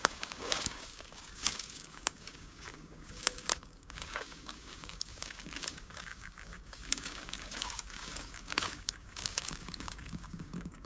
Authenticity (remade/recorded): remade